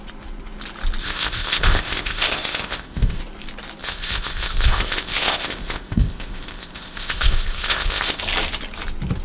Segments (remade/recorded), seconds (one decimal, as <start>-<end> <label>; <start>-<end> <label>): 0.0-1.0 recorded; 1.0-3.2 remade; 3.2-3.8 recorded; 3.8-8.2 remade; 8.2-9.2 recorded